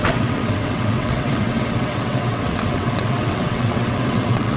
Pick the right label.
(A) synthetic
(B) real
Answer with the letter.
A